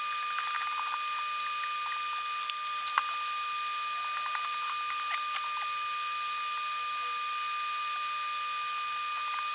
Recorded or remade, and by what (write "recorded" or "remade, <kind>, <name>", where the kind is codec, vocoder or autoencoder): recorded